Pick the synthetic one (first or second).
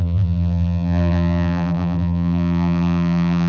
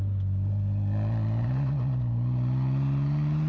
first